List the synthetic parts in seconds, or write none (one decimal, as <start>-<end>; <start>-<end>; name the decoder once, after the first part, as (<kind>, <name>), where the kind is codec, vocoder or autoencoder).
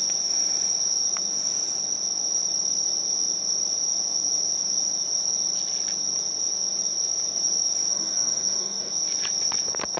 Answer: 7.9-8.9 (codec, DAC)